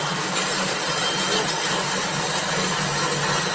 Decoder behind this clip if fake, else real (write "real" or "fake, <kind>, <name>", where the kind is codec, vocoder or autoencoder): real